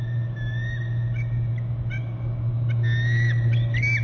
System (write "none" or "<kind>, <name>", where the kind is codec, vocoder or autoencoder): none